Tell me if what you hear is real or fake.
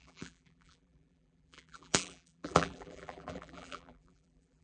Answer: fake